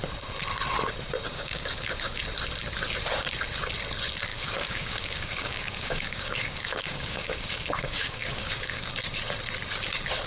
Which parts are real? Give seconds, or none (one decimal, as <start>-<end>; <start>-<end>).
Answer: 0.0-1.3; 2.2-4.3; 8.9-10.3